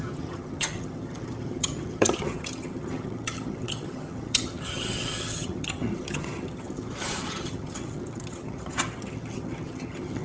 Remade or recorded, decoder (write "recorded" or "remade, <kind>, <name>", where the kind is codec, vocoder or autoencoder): remade, vocoder, HiFi-GAN